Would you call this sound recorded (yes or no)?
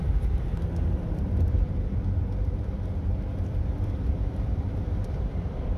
no